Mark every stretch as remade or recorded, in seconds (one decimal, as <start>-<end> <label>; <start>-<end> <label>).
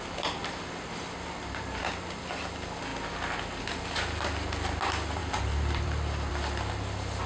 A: 0.0-5.2 recorded; 5.2-6.3 remade; 6.3-7.3 recorded